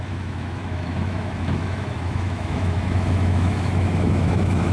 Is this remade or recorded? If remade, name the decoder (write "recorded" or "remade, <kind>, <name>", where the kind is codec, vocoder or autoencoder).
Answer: remade, autoencoder, DAC-VAE